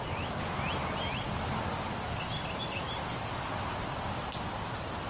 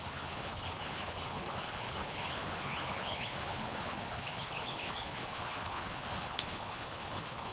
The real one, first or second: first